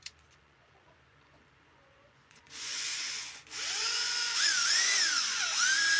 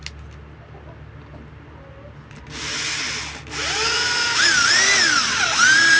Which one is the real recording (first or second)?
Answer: second